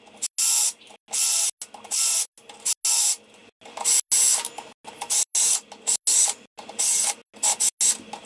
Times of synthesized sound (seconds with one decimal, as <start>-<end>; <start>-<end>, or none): none